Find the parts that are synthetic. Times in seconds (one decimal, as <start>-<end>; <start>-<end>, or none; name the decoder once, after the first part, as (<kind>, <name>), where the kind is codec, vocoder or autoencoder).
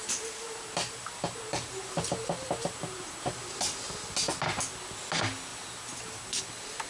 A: 0.0-3.7 (vocoder, BigVGAN v2); 5.5-6.4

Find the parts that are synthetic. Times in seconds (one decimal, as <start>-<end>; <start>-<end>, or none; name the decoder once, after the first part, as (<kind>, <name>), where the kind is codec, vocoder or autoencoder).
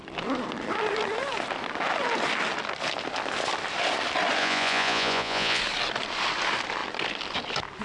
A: 4.4-5.6 (vocoder, Vocos)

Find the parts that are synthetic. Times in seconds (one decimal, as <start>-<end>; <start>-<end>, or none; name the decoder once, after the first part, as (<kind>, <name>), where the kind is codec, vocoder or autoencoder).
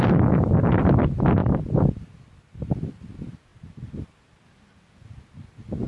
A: 1.4-2.7 (vocoder, BigVGAN v2); 3.5-4.0